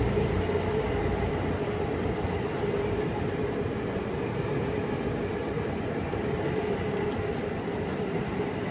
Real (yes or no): yes